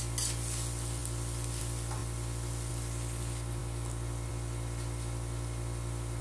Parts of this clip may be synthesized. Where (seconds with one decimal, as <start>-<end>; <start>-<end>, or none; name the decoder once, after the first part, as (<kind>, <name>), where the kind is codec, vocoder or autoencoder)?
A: none